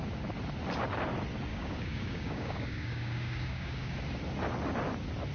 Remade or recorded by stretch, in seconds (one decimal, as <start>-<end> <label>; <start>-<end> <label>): 0.0-1.5 recorded; 1.5-3.9 remade; 3.9-5.3 recorded